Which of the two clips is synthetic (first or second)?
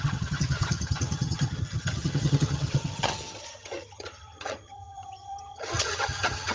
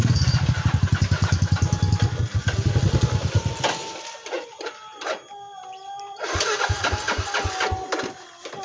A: first